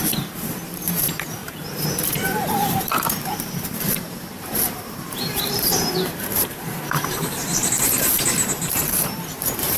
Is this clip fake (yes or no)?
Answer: yes